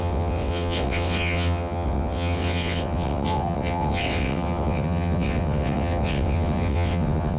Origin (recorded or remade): remade